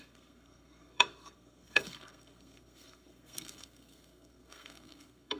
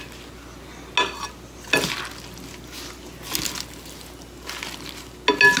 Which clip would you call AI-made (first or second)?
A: first